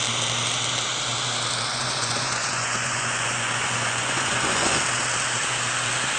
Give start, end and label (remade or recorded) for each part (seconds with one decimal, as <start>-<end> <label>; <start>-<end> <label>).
0.0-1.7 recorded; 1.7-4.8 remade; 4.8-6.2 recorded